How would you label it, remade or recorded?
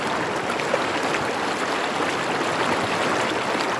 recorded